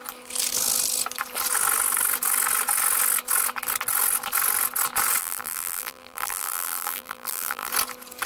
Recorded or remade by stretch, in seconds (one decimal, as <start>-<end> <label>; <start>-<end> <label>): 0.0-5.2 recorded; 5.2-7.7 remade; 7.7-8.3 recorded